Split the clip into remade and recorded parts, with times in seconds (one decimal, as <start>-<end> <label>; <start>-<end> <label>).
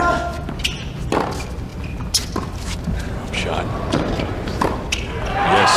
0.0-5.8 recorded